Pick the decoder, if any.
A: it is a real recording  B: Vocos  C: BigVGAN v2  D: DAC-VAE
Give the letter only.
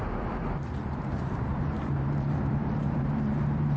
C